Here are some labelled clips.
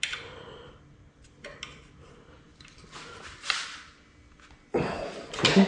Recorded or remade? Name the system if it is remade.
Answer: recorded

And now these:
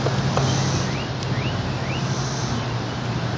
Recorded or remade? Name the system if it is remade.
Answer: recorded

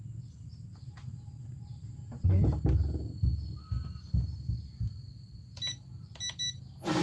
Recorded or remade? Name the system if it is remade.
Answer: recorded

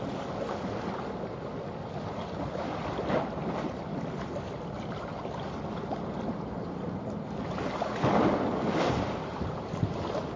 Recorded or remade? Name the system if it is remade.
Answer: recorded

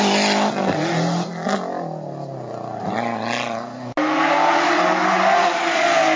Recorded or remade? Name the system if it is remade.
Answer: recorded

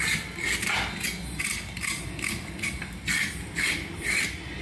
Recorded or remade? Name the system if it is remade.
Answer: recorded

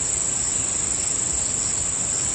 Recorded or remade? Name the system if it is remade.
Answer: recorded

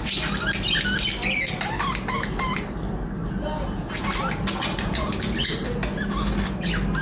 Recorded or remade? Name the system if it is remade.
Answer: recorded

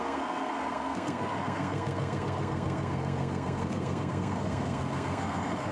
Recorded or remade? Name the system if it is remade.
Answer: remade, codec, SNAC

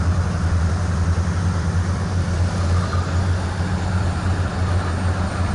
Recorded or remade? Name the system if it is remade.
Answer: recorded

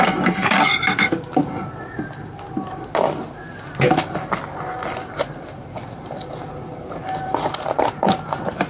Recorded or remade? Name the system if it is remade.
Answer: recorded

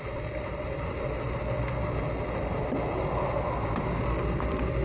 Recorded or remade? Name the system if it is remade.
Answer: recorded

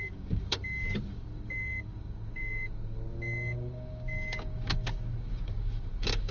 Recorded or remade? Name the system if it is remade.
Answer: remade, codec, DAC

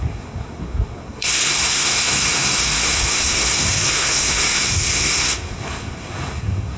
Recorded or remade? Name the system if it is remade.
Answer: remade, codec, SNAC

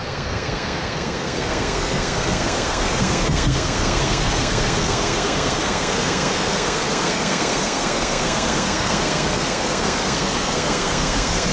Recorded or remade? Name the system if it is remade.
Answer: remade, codec, SNAC